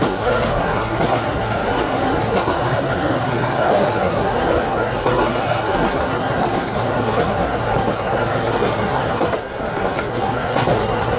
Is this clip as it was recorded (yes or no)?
no